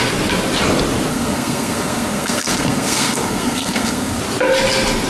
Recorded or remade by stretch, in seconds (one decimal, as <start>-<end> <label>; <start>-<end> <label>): 0.0-1.1 recorded; 1.1-4.2 remade; 4.2-5.1 recorded